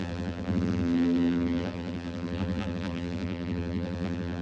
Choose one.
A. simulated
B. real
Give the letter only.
A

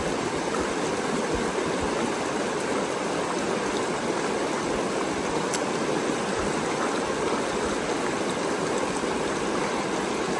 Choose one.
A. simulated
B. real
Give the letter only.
B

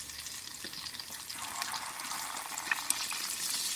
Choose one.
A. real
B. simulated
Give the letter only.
A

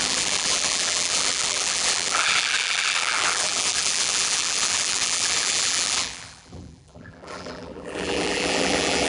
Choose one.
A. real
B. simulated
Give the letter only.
B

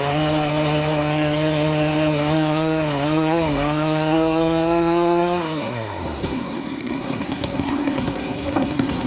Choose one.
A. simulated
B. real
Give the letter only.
A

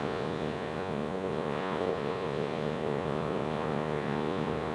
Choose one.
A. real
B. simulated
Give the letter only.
B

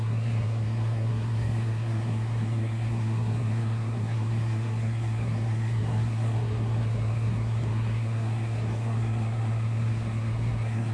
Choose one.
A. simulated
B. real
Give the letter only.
A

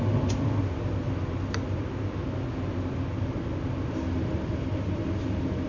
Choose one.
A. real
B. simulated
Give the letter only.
A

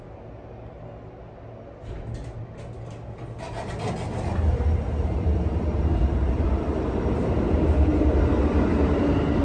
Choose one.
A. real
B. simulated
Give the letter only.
A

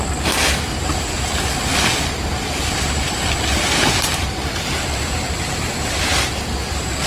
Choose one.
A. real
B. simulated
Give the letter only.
B